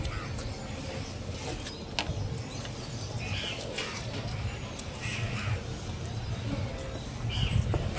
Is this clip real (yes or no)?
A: yes